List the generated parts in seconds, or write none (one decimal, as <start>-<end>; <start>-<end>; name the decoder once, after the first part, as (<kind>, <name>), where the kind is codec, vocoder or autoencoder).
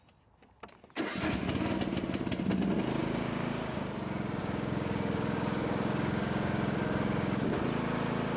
3.0-3.9 (codec, DAC); 4.4-7.5